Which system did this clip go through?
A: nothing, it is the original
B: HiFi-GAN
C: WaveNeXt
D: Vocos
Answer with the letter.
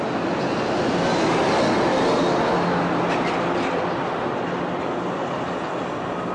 A